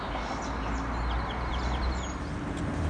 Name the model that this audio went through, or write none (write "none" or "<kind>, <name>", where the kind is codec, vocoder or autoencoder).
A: none